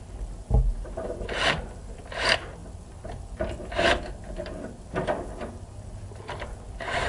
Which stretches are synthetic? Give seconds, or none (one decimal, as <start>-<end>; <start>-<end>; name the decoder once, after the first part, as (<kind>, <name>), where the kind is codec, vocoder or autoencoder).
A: 0.4-1.6 (vocoder, BigVGAN v2)